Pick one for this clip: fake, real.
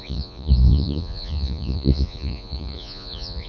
fake